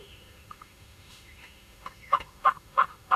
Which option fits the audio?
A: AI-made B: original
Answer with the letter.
A